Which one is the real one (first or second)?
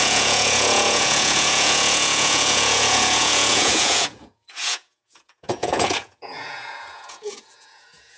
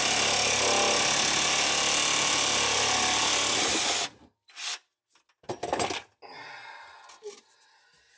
second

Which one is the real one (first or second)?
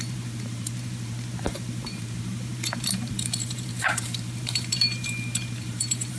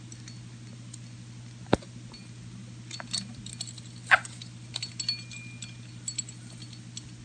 second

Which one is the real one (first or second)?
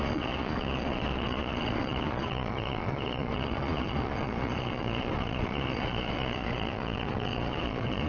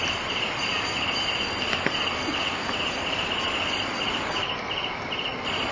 second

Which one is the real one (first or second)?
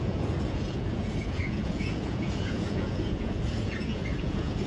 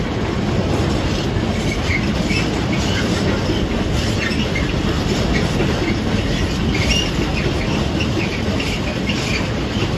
second